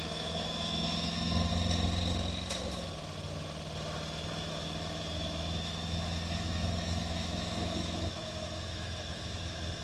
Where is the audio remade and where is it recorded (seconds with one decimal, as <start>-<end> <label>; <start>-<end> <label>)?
0.0-1.5 remade; 1.5-4.5 recorded; 4.5-9.8 remade